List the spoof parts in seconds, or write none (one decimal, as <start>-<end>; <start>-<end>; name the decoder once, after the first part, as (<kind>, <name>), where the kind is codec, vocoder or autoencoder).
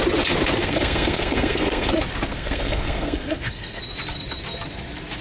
0.6-1.9 (codec, SNAC); 2.3-3.8